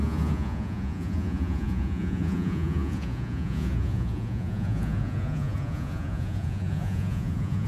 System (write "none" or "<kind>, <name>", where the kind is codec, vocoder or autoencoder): vocoder, Vocos